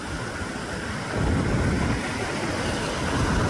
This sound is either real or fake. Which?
real